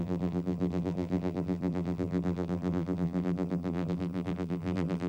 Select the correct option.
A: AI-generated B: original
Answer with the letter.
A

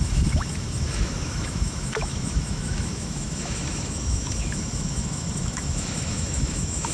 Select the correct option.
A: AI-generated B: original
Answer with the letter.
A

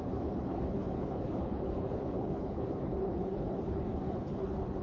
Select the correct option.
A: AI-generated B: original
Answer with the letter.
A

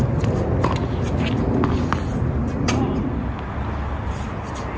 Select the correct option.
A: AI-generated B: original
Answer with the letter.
B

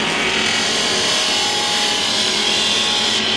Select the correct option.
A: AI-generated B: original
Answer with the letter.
A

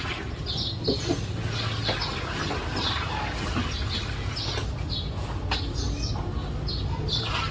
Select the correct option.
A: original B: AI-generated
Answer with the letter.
A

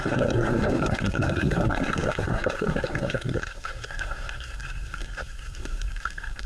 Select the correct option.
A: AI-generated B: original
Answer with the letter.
A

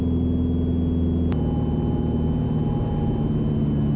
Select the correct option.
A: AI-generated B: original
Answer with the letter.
B